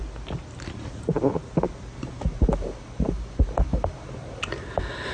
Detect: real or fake real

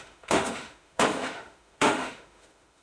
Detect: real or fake fake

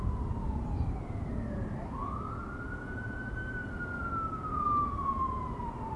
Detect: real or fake real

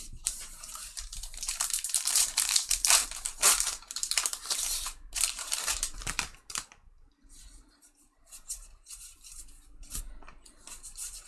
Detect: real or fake fake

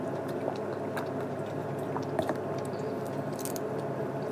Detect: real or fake real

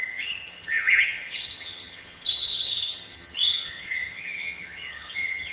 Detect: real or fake fake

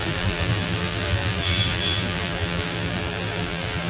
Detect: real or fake fake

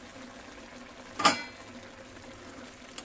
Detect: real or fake real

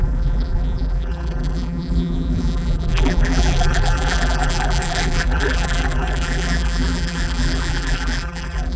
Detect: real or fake fake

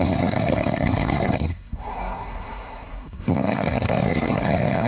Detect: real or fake fake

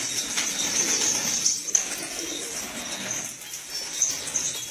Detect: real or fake real